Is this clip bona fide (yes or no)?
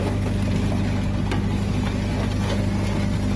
yes